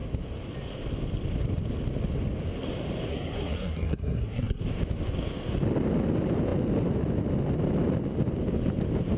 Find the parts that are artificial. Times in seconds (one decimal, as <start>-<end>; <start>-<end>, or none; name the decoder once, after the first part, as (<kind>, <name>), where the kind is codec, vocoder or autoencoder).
3.1-4.6 (codec, SNAC)